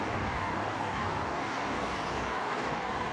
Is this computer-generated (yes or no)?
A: yes